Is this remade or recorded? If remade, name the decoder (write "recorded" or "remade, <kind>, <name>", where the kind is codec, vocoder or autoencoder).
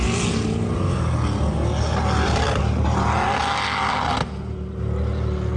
recorded